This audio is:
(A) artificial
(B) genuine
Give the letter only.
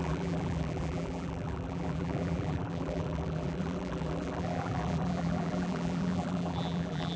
A